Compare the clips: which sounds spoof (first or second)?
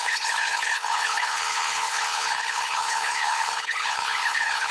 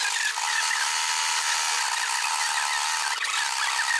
first